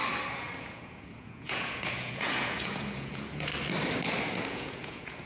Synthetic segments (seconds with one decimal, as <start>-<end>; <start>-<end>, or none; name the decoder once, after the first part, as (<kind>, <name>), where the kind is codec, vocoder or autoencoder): 0.6-3.5 (vocoder, Vocos); 4.4-5.3